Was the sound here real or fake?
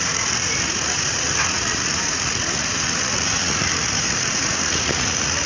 fake